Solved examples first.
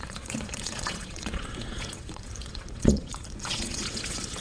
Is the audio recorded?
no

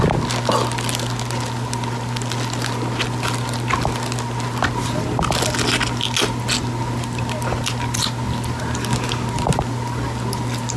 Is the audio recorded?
yes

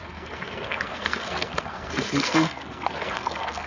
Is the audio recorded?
no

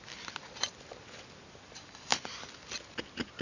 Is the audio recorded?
yes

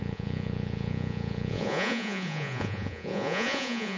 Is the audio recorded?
no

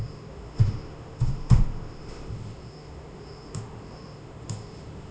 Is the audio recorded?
no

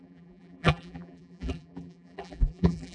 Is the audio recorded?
no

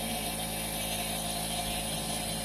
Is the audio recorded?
yes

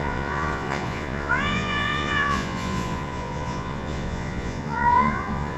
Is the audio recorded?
no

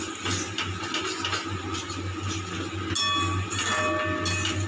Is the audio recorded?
yes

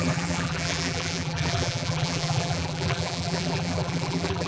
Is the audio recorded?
no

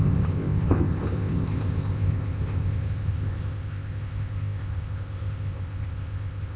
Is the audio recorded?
no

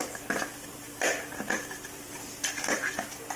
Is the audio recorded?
yes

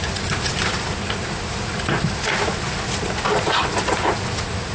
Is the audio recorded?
yes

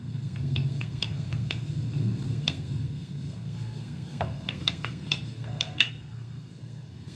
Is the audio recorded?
no